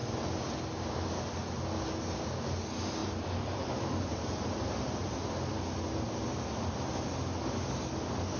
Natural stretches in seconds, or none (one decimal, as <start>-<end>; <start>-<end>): 0.0-3.0; 5.1-8.4